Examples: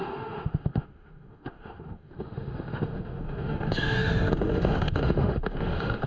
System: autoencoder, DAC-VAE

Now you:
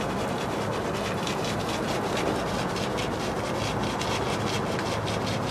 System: none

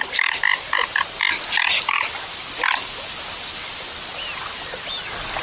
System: none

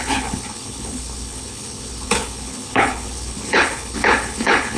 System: codec, HILCodec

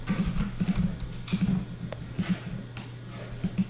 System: none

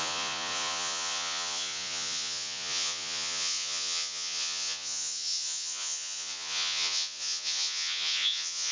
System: vocoder, Vocos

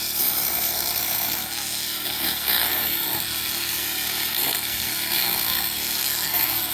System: codec, SNAC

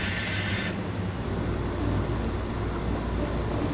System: none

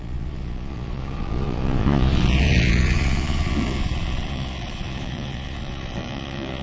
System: vocoder, Vocos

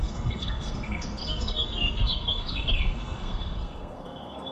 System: codec, SNAC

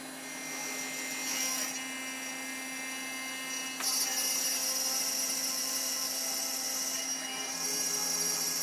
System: none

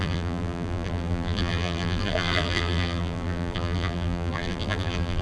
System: vocoder, BigVGAN v2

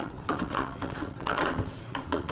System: vocoder, WaveNeXt